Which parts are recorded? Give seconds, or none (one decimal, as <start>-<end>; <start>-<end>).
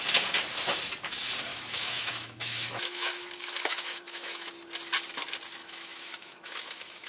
0.0-1.5; 4.5-5.6